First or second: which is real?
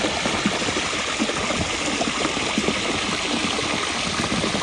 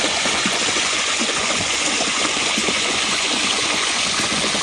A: first